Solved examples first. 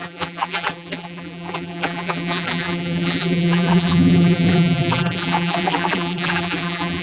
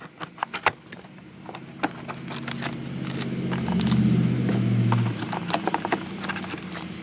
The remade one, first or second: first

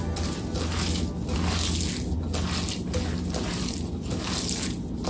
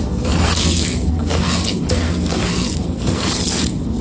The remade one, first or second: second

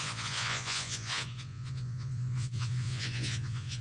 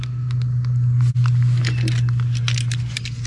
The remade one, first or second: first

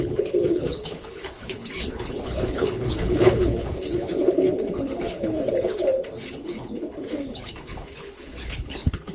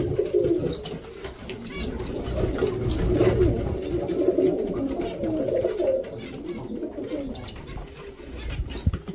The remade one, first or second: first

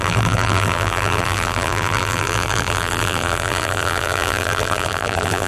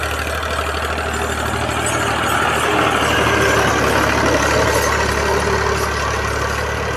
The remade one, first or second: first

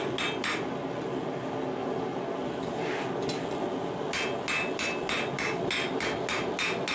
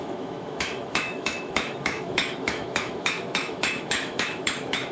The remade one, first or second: second